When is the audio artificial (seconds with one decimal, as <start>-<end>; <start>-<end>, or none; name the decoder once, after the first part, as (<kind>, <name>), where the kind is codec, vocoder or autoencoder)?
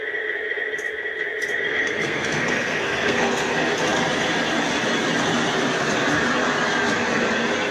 1.8-3.5 (codec, SNAC)